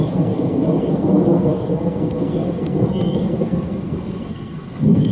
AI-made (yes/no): yes